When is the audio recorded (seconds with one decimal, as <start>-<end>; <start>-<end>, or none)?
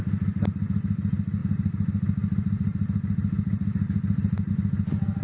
0.0-5.2